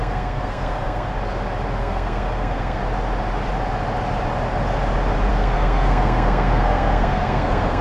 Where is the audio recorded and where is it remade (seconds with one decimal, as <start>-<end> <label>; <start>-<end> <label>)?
0.0-1.1 remade; 1.1-1.8 recorded; 1.8-2.8 remade; 2.8-5.3 recorded; 5.3-7.8 remade